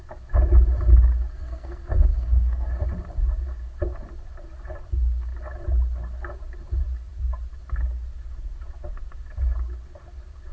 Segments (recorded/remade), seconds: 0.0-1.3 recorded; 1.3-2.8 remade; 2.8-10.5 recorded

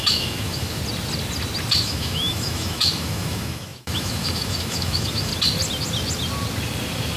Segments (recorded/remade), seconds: 0.0-0.8 remade; 0.8-1.7 recorded; 1.7-5.3 remade; 5.3-7.2 recorded

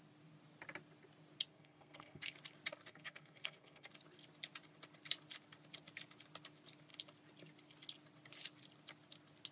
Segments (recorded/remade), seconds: 0.0-1.5 recorded; 1.5-2.3 remade; 2.3-2.9 recorded; 2.9-3.9 remade; 3.9-9.5 recorded

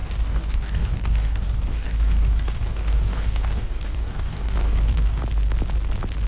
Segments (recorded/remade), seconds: 0.0-5.2 remade; 5.2-6.3 recorded

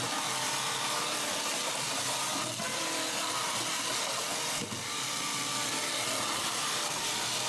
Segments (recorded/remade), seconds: 0.0-7.5 recorded

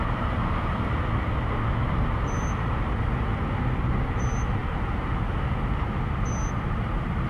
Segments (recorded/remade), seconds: 0.0-7.3 recorded

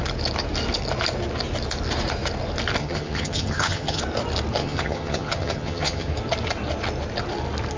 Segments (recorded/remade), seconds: 0.0-2.8 recorded; 2.8-4.0 remade; 4.0-4.6 recorded; 4.6-6.1 remade; 6.1-7.8 recorded